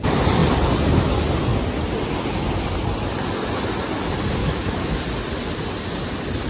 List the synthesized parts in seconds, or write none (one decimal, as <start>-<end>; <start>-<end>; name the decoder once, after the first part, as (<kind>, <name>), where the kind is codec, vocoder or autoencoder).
4.4-5.0 (autoencoder, DAC-VAE)